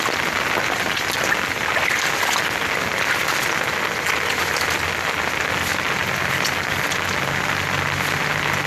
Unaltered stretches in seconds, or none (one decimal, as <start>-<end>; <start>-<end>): 0.0-8.7